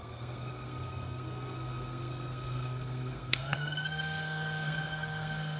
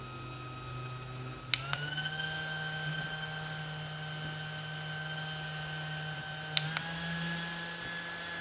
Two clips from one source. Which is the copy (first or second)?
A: first